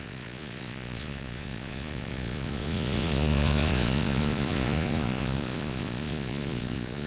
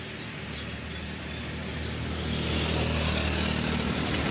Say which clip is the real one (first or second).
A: second